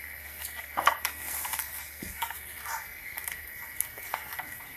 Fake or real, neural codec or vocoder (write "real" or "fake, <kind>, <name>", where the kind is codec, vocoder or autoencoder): fake, codec, SNAC